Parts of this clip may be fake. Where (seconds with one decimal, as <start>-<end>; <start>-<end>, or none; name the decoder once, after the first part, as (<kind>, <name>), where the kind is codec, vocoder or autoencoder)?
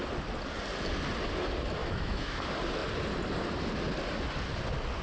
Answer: 1.8-2.4 (autoencoder, DAC-VAE)